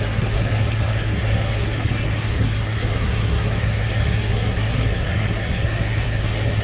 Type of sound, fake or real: fake